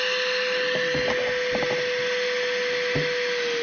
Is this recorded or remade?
recorded